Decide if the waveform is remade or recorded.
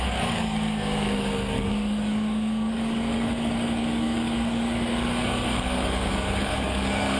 remade